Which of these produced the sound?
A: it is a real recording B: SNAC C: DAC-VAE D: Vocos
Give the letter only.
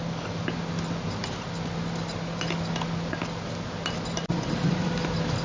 A